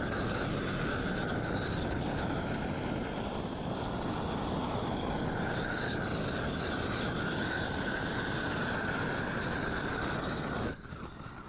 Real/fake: real